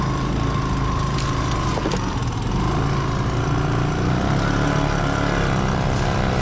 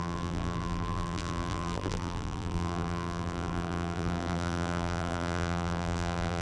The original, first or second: first